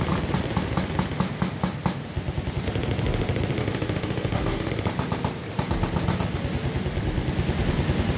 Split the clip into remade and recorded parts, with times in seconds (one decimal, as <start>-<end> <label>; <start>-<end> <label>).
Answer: 0.0-3.6 recorded; 3.6-4.7 remade; 4.7-8.2 recorded